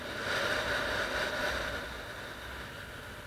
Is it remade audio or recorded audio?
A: recorded